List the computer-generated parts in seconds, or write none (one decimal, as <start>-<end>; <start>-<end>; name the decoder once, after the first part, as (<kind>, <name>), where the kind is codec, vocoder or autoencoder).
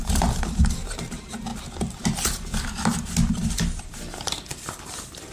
0.0-1.5 (vocoder, BigVGAN v2); 3.3-5.3